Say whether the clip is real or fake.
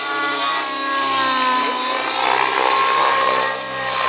real